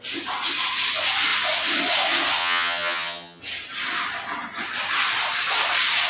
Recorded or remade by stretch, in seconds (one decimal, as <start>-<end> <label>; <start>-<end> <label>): 0.0-2.4 recorded; 2.4-3.4 remade; 3.4-6.1 recorded